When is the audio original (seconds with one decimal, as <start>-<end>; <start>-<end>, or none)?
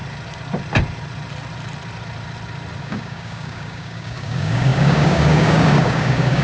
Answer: 0.0-2.8